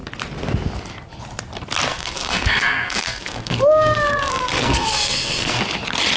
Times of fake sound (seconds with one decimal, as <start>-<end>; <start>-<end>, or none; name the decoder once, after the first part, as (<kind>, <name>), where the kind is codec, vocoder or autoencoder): 1.9-5.6 (codec, SNAC)